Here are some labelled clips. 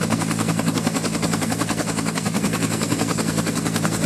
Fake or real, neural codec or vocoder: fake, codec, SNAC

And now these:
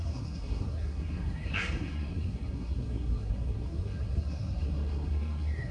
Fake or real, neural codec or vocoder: fake, codec, SNAC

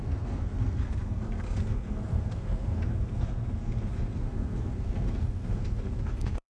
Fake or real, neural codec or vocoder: fake, codec, SNAC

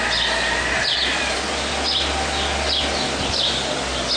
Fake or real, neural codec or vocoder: real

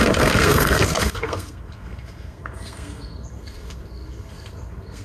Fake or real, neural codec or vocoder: fake, codec, SNAC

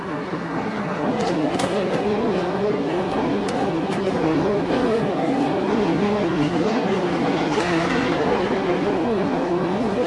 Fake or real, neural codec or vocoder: fake, codec, SNAC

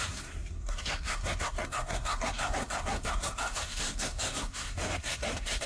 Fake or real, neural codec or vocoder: fake, codec, SNAC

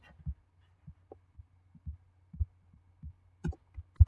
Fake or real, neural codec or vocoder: real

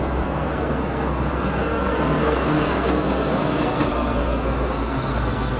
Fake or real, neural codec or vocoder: fake, codec, SNAC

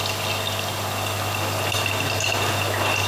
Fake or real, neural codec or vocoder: real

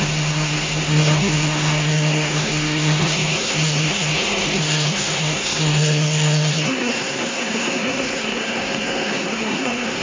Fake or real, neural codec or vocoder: fake, codec, SNAC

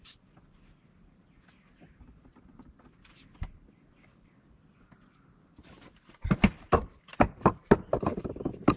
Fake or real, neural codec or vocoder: real